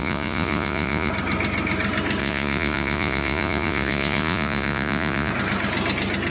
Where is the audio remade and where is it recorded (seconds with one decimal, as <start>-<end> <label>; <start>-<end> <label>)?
0.0-1.1 remade; 1.1-2.2 recorded; 2.2-5.3 remade; 5.3-6.3 recorded